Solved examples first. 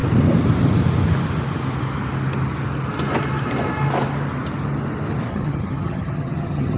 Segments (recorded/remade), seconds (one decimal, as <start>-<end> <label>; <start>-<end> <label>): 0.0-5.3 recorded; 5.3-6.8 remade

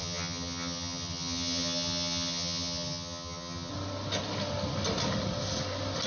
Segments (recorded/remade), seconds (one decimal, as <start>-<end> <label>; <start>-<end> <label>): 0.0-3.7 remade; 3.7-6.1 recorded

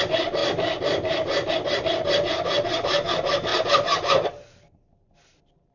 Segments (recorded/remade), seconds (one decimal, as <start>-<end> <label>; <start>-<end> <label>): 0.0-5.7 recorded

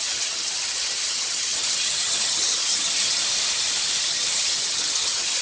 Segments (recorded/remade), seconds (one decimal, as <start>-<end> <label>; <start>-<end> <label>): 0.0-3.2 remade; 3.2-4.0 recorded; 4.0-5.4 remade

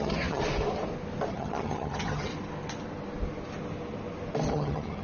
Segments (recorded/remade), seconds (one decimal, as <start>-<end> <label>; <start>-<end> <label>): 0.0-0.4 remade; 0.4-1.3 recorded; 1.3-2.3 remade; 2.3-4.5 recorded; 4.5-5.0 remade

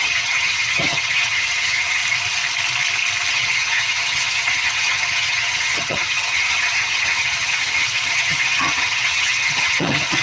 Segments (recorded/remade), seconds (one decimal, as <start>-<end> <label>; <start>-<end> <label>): 0.0-2.0 remade; 2.0-3.3 recorded; 3.3-10.2 remade

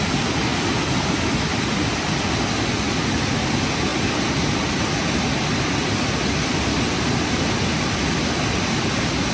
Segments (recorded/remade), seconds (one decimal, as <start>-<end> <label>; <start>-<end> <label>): 0.0-9.3 recorded

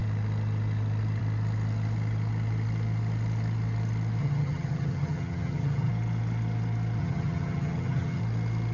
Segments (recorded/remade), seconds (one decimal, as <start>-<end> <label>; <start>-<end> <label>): 0.0-4.2 recorded; 4.2-5.9 remade; 5.9-7.0 recorded; 7.0-8.2 remade; 8.2-8.7 recorded